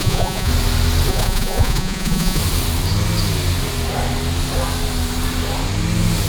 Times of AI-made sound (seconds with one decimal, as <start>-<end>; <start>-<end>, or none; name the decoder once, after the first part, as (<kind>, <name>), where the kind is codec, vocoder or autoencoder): 0.0-0.5 (vocoder, Vocos); 1.1-2.4